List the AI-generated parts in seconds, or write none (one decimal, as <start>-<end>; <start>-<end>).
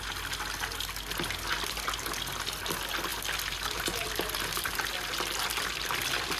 none